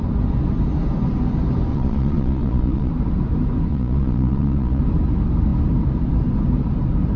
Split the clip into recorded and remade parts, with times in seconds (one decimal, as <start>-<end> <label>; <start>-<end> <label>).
0.0-1.7 recorded; 1.7-2.9 remade; 2.9-3.7 recorded; 3.7-4.8 remade; 4.8-7.2 recorded